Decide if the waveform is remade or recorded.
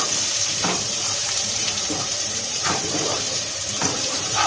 remade